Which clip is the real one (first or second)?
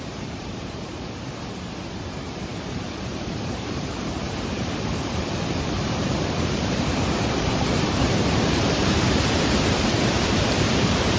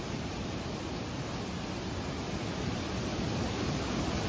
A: second